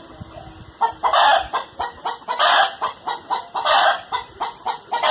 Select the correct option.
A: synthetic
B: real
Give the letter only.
B